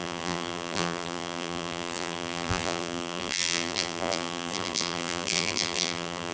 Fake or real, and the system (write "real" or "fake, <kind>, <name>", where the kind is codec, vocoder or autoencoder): fake, vocoder, BigVGAN v2